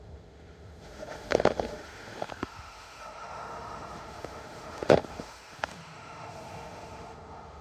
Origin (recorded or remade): remade